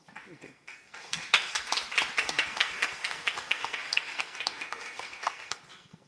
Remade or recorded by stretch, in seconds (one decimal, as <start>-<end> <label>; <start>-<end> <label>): 0.0-1.7 remade; 1.7-2.2 recorded; 2.2-6.1 remade